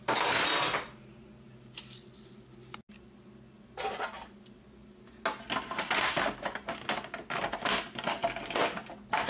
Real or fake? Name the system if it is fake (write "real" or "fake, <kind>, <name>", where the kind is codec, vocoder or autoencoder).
real